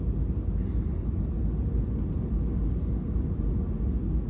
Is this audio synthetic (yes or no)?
no